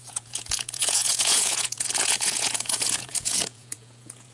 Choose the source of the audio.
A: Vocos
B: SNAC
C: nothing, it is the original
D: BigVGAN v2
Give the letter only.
A